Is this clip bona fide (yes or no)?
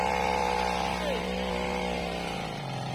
yes